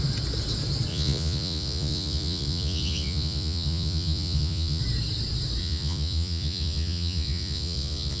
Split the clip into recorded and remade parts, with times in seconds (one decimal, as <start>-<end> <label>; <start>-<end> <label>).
0.0-0.9 recorded; 0.9-4.8 remade; 4.8-5.6 recorded; 5.6-8.2 remade